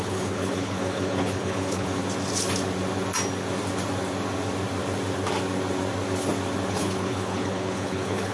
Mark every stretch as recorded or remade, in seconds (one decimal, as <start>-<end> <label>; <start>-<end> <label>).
0.0-2.0 remade; 2.0-6.7 recorded; 6.7-8.3 remade

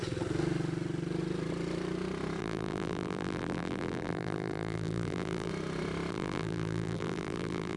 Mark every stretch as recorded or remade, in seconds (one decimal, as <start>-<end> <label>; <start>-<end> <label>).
0.0-2.4 recorded; 2.4-5.5 remade; 5.5-6.1 recorded; 6.1-7.8 remade

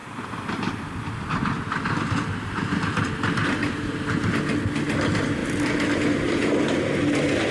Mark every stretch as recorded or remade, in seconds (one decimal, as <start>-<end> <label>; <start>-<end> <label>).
0.0-7.5 recorded

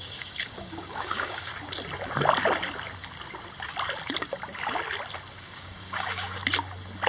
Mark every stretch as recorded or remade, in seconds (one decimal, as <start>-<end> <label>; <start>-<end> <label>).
0.0-1.5 remade; 1.5-5.3 recorded; 5.3-6.4 remade; 6.4-7.1 recorded

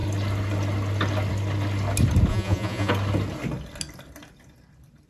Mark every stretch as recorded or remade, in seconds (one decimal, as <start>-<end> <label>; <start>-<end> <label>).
0.0-2.3 recorded; 2.3-2.9 remade; 2.9-5.1 recorded